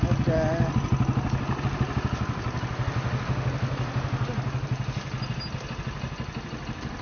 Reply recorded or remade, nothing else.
recorded